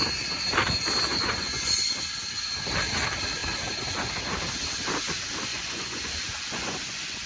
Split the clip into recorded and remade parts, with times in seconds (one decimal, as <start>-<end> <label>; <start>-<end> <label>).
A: 0.0-1.1 recorded; 1.1-1.9 remade; 1.9-5.5 recorded; 5.5-7.3 remade